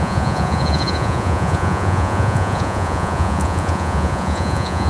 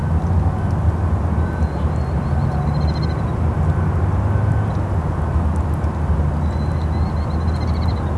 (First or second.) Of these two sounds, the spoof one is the first